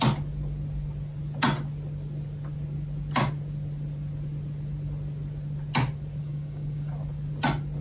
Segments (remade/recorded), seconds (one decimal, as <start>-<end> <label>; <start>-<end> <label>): 0.0-6.2 recorded; 6.2-6.9 remade; 6.9-7.8 recorded